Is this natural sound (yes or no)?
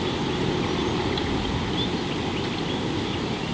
yes